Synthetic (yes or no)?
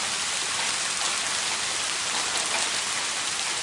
no